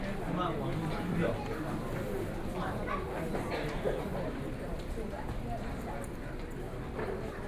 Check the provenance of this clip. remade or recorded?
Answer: recorded